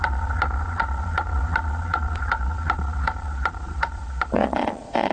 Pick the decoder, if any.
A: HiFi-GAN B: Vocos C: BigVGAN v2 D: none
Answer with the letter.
B